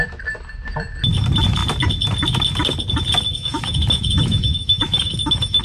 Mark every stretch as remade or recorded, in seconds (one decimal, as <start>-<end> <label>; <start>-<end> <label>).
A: 0.0-3.3 recorded; 3.3-5.6 remade